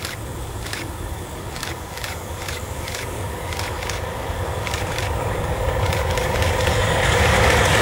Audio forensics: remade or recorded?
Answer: remade